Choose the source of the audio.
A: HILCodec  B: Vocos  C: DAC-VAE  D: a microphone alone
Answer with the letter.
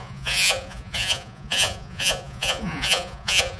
B